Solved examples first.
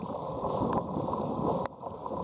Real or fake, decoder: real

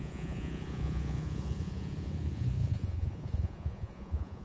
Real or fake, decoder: fake, vocoder, Vocos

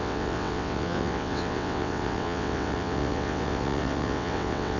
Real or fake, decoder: fake, vocoder, WaveNeXt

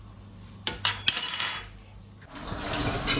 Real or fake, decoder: real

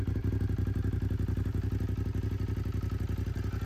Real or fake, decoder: real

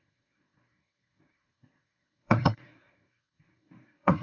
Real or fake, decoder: fake, codec, SNAC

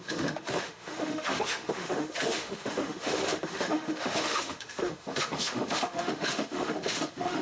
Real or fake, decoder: fake, autoencoder, DAC-VAE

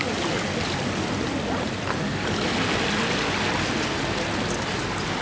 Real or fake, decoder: real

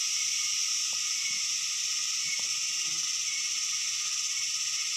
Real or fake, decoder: real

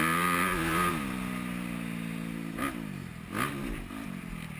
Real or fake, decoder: real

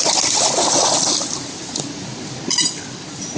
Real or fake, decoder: real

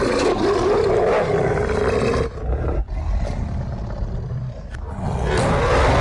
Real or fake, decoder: real